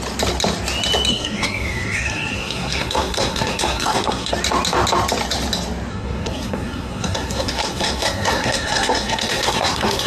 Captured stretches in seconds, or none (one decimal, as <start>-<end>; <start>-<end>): 0.0-1.1; 4.3-5.9